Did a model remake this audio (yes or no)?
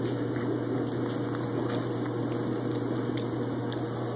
no